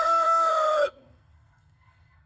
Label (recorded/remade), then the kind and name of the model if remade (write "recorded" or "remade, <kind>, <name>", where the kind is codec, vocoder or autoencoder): remade, codec, SNAC